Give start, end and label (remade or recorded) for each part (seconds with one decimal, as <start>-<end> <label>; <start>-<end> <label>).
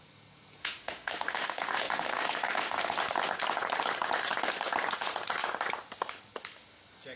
0.0-0.6 recorded; 0.6-3.0 remade; 3.0-7.2 recorded